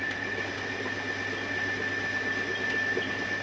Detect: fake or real real